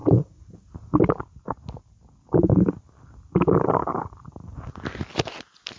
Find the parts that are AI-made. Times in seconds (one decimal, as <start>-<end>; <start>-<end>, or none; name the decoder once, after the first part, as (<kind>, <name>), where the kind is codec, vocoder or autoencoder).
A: none

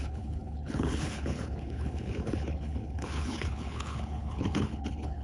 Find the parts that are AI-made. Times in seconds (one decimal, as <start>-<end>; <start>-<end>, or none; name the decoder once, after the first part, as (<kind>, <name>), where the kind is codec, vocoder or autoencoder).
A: 0.0-5.2 (codec, HILCodec)